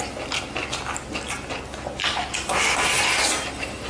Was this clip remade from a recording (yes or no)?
no